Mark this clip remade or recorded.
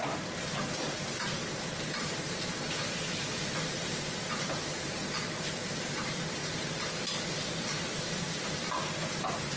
remade